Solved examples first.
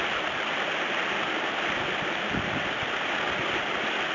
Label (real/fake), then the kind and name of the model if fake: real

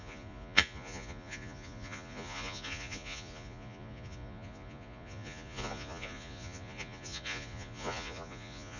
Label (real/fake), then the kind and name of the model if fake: fake, vocoder, Vocos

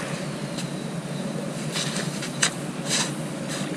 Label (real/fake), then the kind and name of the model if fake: real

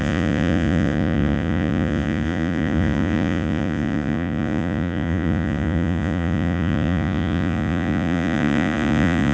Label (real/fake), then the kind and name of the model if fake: fake, vocoder, Vocos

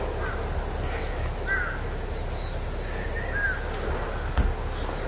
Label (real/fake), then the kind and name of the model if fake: real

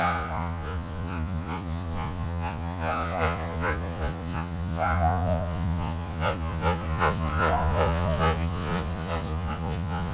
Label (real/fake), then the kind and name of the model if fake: fake, vocoder, Vocos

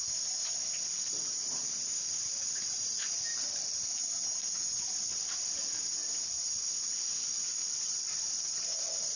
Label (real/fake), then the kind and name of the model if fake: real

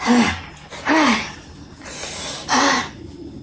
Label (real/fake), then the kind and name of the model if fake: real